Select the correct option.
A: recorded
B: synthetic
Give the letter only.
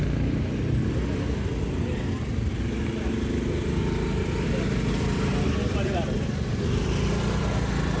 A